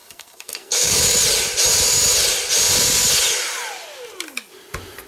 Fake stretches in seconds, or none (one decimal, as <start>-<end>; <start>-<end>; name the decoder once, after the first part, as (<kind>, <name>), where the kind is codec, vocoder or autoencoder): 0.0-1.0 (codec, SNAC)